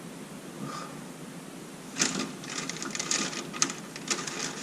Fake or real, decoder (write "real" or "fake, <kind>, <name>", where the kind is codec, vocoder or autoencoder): real